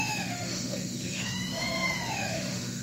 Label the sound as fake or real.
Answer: fake